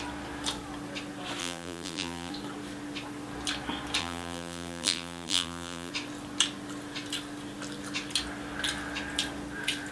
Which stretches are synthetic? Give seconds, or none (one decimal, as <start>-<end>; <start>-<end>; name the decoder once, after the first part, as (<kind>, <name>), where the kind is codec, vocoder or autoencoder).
1.4-2.3 (vocoder, BigVGAN v2); 4.0-5.9